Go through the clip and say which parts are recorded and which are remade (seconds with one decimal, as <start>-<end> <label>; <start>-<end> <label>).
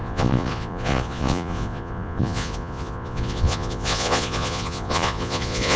0.0-5.8 remade